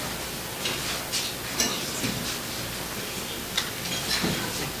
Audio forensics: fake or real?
real